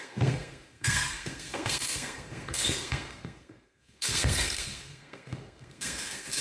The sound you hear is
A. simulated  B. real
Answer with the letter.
A